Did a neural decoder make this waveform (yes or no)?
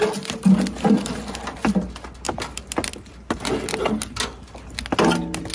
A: no